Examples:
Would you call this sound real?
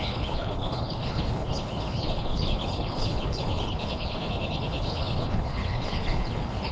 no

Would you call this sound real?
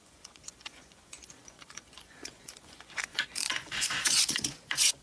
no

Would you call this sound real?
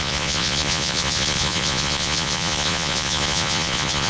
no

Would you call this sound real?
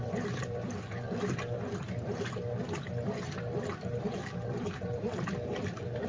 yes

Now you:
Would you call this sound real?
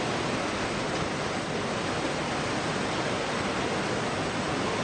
yes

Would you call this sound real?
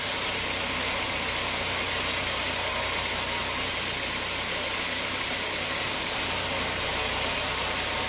yes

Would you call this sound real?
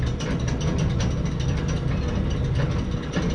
yes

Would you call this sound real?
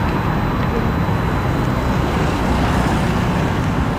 yes